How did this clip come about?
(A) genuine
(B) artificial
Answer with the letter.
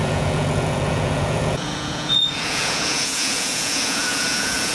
B